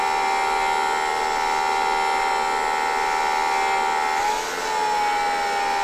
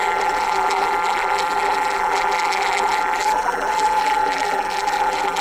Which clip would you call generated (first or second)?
second